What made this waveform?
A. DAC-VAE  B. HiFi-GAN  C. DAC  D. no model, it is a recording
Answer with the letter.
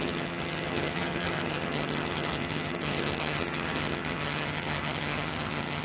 B